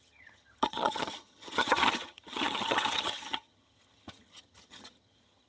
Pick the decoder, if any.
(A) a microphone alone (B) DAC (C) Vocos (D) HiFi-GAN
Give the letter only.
D